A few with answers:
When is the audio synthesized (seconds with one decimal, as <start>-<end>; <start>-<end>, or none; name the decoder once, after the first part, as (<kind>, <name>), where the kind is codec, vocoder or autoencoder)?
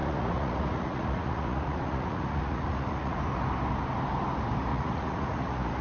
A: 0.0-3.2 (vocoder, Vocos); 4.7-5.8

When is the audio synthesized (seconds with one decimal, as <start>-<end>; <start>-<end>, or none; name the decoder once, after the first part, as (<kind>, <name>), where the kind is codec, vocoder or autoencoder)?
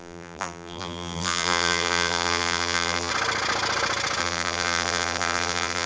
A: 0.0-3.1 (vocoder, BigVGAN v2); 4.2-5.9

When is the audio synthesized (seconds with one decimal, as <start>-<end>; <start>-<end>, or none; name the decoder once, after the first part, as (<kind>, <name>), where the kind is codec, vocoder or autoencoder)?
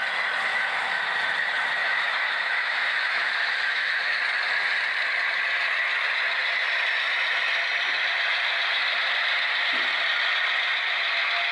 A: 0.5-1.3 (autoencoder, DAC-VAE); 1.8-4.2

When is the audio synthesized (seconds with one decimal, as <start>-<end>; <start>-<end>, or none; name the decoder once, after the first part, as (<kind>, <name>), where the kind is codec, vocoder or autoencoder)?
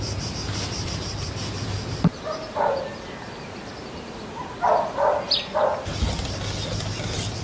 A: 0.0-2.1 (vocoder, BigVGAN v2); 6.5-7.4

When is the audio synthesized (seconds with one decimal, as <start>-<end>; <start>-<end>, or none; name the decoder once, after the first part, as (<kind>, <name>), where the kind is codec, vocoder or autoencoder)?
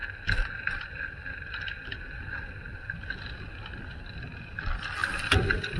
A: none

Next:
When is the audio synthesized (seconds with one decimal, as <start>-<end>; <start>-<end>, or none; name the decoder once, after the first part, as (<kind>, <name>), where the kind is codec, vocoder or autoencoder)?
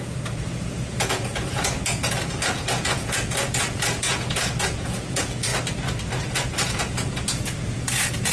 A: 0.0-5.5 (vocoder, Vocos); 6.3-8.3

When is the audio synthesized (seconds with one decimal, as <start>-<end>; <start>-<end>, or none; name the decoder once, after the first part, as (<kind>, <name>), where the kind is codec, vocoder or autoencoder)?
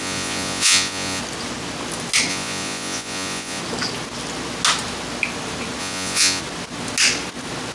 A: 0.0-1.2 (vocoder, Vocos); 2.3-3.6; 5.8-6.4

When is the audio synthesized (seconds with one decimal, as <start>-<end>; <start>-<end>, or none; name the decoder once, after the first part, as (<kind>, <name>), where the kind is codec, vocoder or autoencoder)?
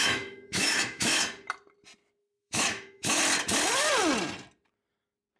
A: 0.0-1.2 (autoencoder, DAC-VAE); 2.2-3.2